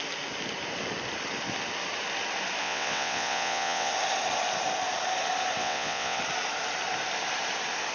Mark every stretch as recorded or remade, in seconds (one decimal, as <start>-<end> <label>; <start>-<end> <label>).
0.0-2.6 recorded; 2.6-3.9 remade; 3.9-5.6 recorded; 5.6-6.2 remade; 6.2-7.9 recorded